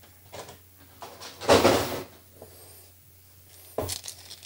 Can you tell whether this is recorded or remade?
recorded